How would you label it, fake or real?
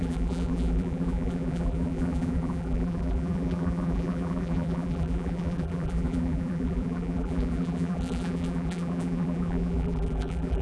fake